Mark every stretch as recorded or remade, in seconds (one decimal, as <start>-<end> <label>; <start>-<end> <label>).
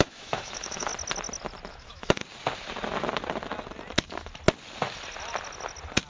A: 0.0-0.9 remade; 0.9-1.7 recorded; 1.7-2.2 remade; 2.2-6.1 recorded